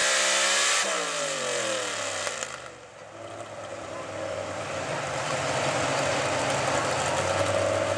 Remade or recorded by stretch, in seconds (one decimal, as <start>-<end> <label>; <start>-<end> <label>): 0.0-2.3 remade; 2.3-3.7 recorded; 3.7-6.2 remade; 6.2-8.0 recorded